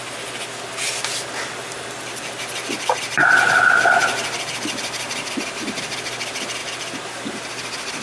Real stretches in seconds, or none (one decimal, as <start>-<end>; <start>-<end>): 0.0-8.0